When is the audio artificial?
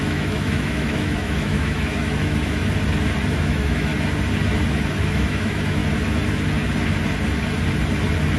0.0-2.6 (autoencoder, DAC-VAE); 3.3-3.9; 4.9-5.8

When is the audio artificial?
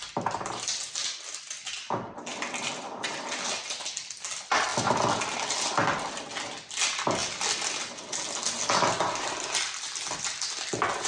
none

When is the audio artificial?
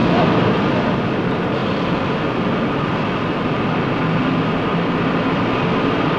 none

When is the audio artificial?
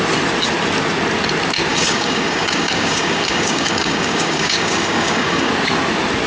1.7-5.5 (codec, DAC)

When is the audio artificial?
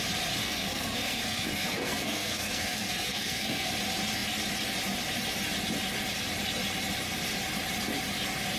0.4-3.7 (codec, SNAC)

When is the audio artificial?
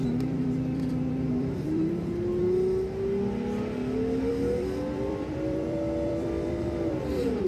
0.0-2.4 (vocoder, BigVGAN v2); 4.3-7.5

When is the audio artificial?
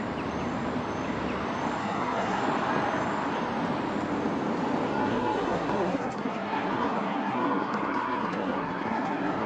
1.8-2.4 (codec, SNAC); 4.9-9.5